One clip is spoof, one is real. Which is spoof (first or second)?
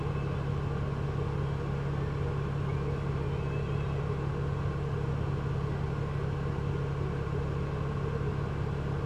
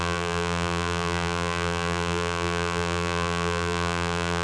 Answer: second